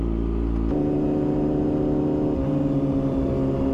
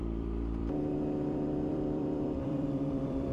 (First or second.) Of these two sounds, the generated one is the second